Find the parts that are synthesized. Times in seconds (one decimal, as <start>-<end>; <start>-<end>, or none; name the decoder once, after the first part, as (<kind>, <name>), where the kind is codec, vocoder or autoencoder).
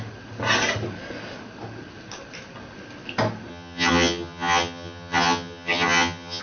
3.5-6.4 (vocoder, HiFi-GAN)